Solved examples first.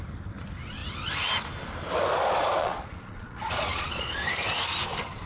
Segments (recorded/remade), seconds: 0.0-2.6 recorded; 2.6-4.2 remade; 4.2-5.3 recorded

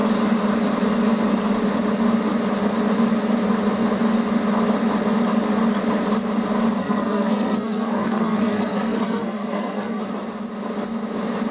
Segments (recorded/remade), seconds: 0.0-6.8 recorded; 6.8-10.0 remade; 10.0-11.5 recorded

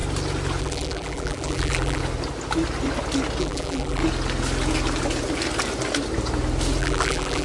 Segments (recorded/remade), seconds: 0.0-0.6 recorded; 0.6-2.0 remade; 2.0-3.4 recorded; 3.4-4.0 remade; 4.0-6.8 recorded; 6.8-7.4 remade

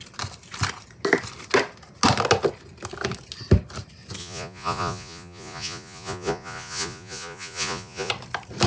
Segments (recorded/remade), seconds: 0.0-4.2 recorded; 4.2-8.1 remade; 8.1-8.7 recorded

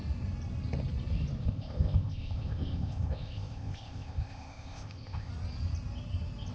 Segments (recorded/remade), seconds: 0.0-1.4 recorded; 1.4-5.3 remade; 5.3-6.5 recorded

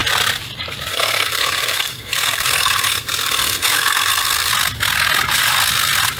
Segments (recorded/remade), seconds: 0.0-0.9 recorded; 0.9-4.5 remade; 4.5-6.2 recorded

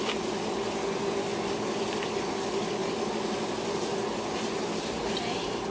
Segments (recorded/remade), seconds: 0.0-5.7 recorded

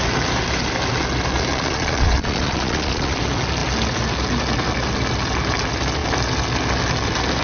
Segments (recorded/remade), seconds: 0.0-1.5 recorded; 1.5-3.2 remade; 3.2-7.4 recorded